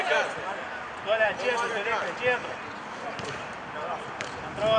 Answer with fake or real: real